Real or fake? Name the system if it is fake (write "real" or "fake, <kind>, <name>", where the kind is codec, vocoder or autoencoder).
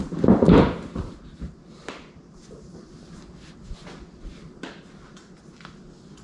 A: real